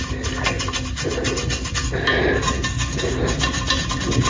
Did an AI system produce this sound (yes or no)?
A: no